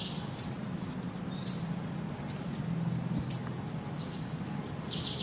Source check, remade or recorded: recorded